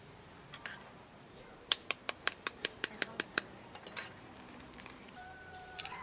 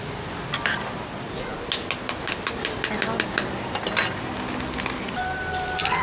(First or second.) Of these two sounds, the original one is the second